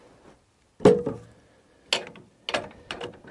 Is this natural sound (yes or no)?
yes